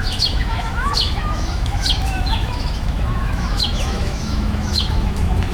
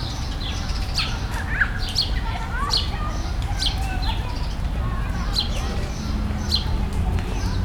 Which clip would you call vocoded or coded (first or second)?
first